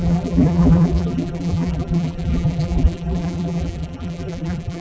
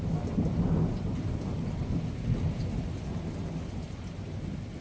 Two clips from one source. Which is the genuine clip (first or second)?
second